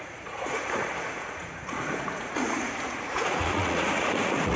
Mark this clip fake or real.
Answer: fake